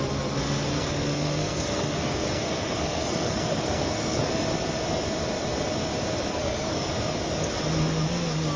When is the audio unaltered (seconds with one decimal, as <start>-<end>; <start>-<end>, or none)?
0.0-0.7; 4.3-6.3; 6.9-8.6